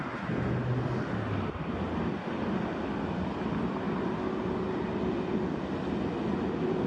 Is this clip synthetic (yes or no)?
no